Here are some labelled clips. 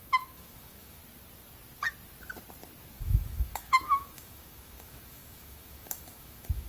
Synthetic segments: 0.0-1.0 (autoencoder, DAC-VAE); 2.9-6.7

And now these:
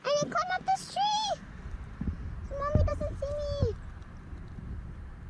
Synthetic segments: 0.0-2.4 (vocoder, BigVGAN v2); 2.9-5.3

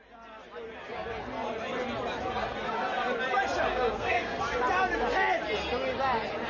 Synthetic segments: 3.7-4.4 (codec, SNAC)

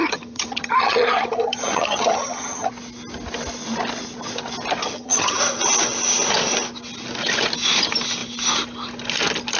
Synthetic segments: 0.0-2.7 (vocoder, HiFi-GAN); 4.8-5.4

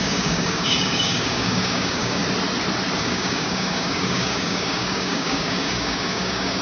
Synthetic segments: 0.0-2.2 (codec, DAC); 3.0-6.6

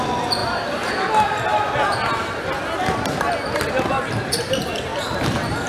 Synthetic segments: 4.9-5.7 (vocoder, BigVGAN v2)

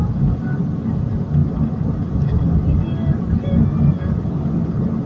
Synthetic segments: none